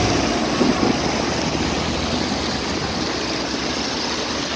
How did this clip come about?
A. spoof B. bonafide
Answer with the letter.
B